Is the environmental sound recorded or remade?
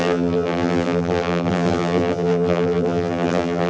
remade